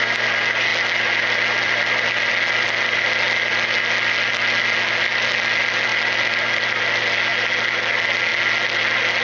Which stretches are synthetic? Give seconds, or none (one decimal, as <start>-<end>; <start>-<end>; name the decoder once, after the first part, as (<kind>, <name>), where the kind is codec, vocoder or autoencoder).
none